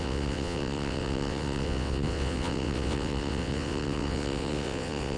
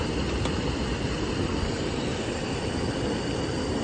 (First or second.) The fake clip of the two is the first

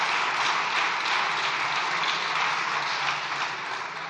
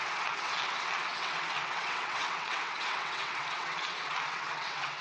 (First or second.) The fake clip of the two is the second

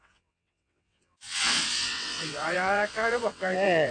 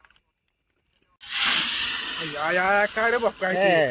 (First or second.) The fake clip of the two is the first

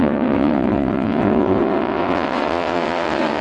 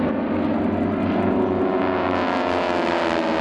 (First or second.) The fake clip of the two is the first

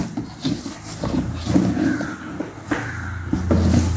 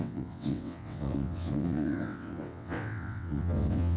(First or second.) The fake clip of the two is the second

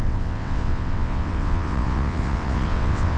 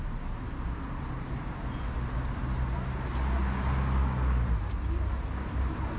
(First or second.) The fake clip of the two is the first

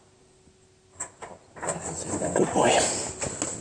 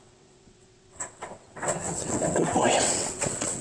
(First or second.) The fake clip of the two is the second